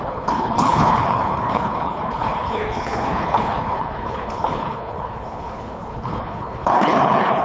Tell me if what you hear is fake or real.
fake